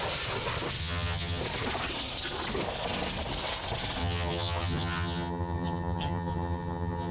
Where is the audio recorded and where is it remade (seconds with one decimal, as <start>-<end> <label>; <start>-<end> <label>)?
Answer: 0.0-0.8 recorded; 0.8-1.4 remade; 1.4-4.0 recorded; 4.0-7.1 remade